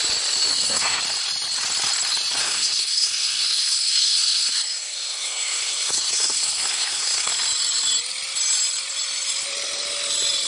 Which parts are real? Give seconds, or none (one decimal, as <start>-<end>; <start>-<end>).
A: 0.0-0.5; 1.0-2.4; 7.3-10.5